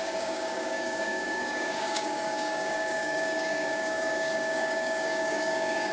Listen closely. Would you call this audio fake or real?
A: fake